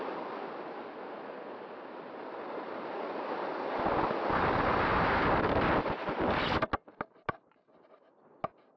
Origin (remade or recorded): recorded